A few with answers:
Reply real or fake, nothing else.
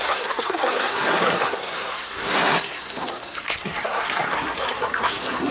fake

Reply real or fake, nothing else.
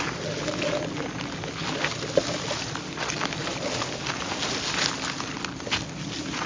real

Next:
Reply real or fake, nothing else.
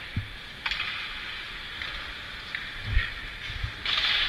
real